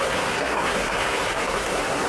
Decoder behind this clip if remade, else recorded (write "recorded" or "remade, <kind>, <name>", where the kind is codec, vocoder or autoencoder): remade, codec, SNAC